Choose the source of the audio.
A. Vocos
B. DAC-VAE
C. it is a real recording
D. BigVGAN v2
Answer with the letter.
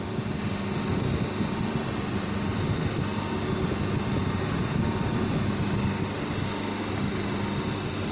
C